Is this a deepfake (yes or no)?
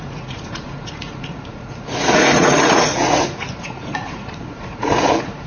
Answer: yes